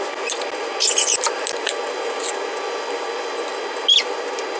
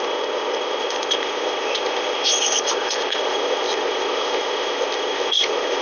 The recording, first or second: first